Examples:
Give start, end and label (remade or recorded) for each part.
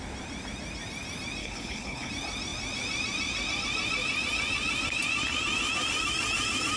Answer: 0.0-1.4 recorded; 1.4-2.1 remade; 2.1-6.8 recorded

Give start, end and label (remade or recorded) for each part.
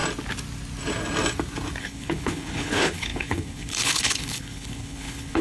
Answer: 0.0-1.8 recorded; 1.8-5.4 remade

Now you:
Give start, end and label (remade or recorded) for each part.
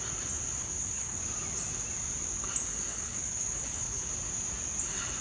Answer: 0.0-0.6 recorded; 0.6-1.2 remade; 1.2-2.9 recorded; 2.9-4.1 remade; 4.1-5.2 recorded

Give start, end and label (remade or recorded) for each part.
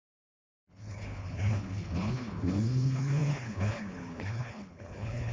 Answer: 0.0-5.3 remade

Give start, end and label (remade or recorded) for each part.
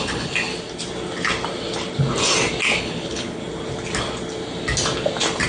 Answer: 0.0-0.5 remade; 0.5-2.8 recorded; 2.8-3.4 remade; 3.4-5.5 recorded